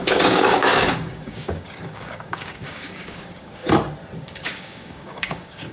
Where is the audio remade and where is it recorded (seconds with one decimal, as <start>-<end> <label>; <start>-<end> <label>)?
0.0-3.6 remade; 3.6-4.2 recorded; 4.2-5.7 remade